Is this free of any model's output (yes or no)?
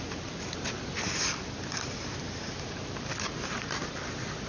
yes